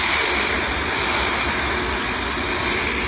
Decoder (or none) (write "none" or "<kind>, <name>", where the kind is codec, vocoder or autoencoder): none